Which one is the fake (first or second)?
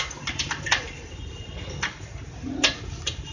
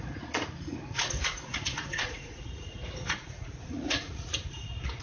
second